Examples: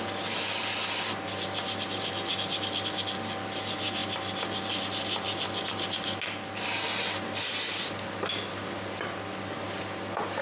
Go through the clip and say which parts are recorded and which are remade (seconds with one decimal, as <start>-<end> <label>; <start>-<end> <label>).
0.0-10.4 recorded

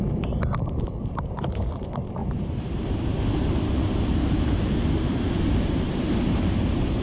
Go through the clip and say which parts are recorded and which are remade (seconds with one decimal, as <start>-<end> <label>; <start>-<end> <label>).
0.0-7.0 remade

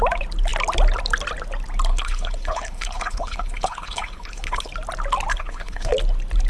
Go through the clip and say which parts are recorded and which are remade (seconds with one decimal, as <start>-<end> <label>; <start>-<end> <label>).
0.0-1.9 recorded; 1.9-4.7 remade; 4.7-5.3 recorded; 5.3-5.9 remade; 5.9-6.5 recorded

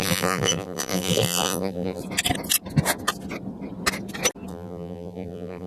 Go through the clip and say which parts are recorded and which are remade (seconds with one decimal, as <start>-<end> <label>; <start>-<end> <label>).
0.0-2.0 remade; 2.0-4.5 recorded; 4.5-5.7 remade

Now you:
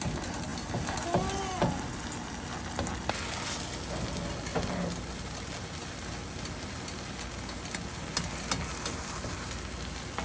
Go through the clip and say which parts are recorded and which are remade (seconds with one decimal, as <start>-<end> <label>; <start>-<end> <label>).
0.0-10.2 recorded

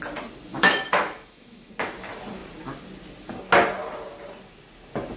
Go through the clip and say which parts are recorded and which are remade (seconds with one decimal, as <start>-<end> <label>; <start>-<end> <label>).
0.0-0.5 recorded; 0.5-1.7 remade; 1.7-5.2 recorded

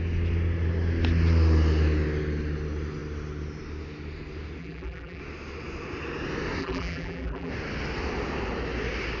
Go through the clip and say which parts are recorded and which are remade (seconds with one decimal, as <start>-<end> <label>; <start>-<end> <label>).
0.0-4.6 recorded; 4.6-5.2 remade; 5.2-6.6 recorded; 6.6-7.5 remade; 7.5-9.2 recorded